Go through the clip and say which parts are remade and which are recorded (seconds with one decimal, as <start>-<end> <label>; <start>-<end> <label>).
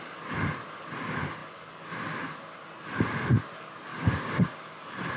0.0-3.9 recorded; 3.9-4.7 remade; 4.7-5.2 recorded